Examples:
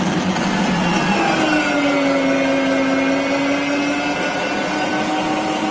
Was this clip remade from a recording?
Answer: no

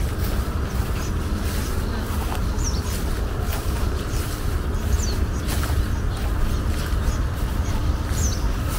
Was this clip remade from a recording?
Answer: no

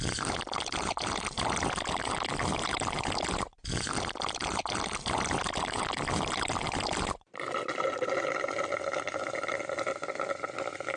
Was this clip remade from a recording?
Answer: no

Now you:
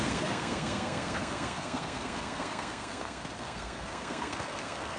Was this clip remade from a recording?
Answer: yes